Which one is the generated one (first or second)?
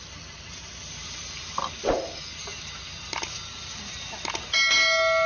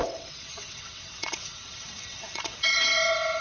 second